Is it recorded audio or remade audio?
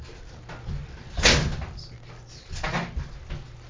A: recorded